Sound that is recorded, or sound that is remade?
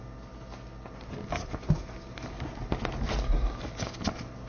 recorded